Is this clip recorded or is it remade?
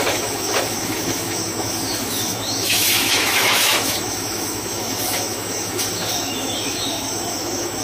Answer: remade